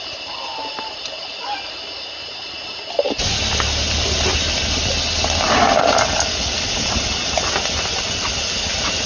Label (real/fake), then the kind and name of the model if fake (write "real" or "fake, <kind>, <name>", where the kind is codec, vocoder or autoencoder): real